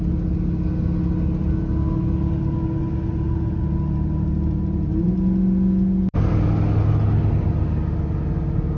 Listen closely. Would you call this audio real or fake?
real